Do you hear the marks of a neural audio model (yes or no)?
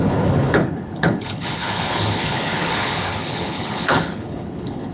yes